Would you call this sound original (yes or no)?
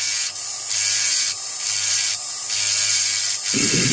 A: yes